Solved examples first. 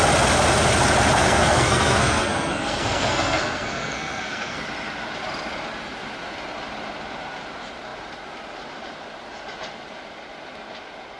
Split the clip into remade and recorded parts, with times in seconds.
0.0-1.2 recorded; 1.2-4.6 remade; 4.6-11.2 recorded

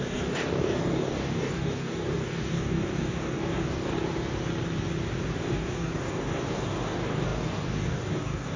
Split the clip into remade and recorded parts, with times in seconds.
0.0-3.9 remade; 3.9-5.4 recorded; 5.4-8.6 remade